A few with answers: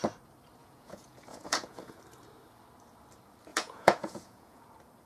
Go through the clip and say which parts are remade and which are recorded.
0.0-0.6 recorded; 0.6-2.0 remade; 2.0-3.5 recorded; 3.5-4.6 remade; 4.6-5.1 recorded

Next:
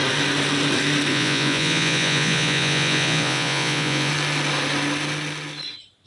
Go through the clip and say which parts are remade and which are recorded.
0.0-1.1 recorded; 1.1-4.1 remade; 4.1-6.1 recorded

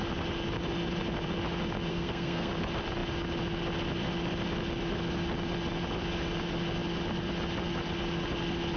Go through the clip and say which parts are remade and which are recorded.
0.0-1.9 recorded; 1.9-2.5 remade; 2.5-8.8 recorded

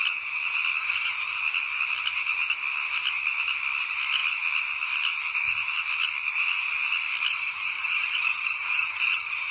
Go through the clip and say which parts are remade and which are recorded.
0.0-0.8 recorded; 0.8-1.4 remade; 1.4-7.3 recorded; 7.3-9.5 remade